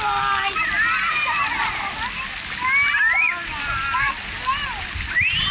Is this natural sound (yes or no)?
yes